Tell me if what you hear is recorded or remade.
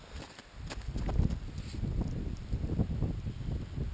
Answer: recorded